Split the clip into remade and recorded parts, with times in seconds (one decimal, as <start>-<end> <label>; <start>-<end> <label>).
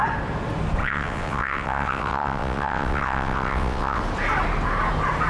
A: 0.0-0.8 recorded; 0.8-4.0 remade; 4.0-5.3 recorded